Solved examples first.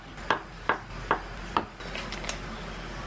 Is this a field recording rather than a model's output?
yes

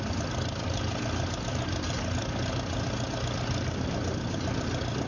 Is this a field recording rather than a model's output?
yes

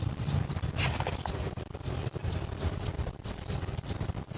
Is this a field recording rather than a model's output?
yes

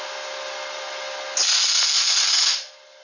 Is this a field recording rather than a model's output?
yes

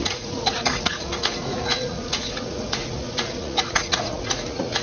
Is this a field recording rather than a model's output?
no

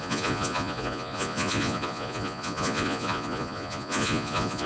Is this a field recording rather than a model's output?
no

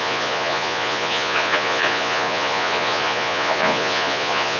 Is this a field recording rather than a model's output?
no